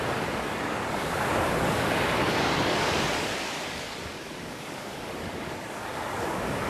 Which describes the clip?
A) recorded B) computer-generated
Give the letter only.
B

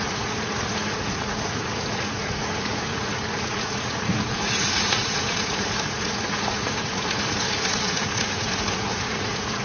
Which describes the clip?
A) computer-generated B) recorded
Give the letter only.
A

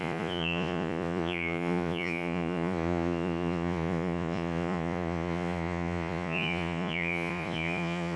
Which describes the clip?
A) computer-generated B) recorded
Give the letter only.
A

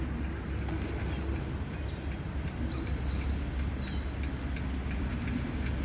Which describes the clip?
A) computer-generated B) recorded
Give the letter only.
B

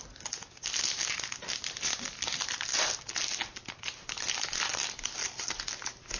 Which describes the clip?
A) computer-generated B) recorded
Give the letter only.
B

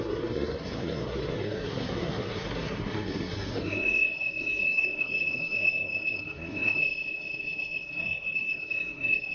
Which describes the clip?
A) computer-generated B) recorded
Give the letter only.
A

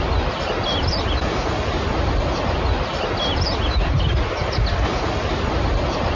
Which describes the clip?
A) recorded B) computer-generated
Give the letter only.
A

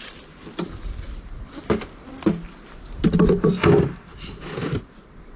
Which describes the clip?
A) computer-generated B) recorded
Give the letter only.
B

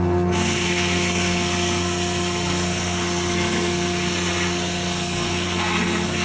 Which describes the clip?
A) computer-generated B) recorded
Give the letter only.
A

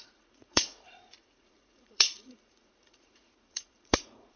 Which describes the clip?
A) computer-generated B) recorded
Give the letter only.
A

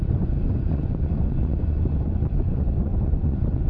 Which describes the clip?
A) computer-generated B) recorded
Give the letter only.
A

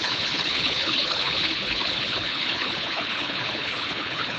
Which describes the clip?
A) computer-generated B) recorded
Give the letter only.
A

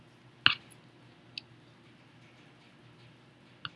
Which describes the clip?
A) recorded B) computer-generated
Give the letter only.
A